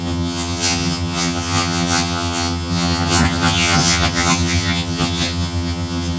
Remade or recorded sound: remade